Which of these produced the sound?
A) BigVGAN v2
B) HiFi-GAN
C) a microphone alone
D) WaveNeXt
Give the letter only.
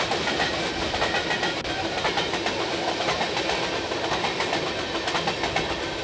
C